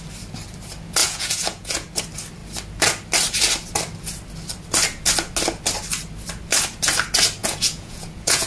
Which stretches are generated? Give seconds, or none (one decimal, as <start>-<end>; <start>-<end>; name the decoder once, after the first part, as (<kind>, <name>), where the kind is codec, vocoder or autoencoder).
1.0-2.0 (vocoder, Vocos); 7.4-8.5